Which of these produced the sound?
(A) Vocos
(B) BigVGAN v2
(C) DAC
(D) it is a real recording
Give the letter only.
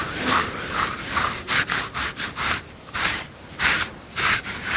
B